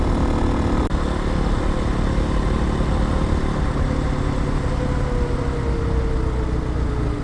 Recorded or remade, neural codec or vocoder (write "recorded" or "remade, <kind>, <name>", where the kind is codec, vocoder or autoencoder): recorded